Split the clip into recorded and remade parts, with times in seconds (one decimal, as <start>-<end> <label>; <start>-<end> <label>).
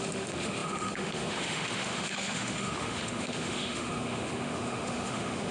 0.0-5.5 remade